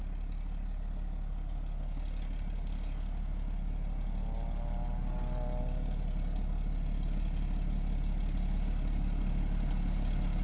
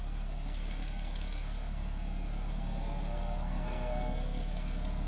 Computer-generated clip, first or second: second